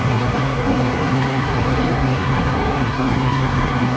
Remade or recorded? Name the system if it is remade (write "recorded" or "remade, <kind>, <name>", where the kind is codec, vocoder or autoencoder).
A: remade, codec, SNAC